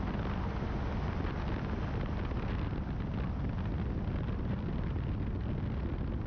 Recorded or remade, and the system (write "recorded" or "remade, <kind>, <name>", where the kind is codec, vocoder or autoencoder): recorded